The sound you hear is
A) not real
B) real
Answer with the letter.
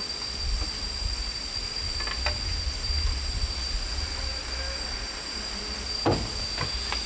B